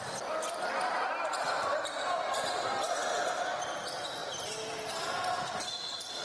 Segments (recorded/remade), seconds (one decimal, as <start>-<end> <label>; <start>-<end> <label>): 0.0-6.2 recorded